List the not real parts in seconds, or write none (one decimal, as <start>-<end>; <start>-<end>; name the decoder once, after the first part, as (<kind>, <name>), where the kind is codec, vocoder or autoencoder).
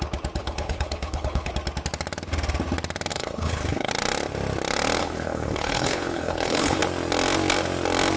0.4-1.5 (codec, HILCodec); 3.1-3.9; 5.0-6.8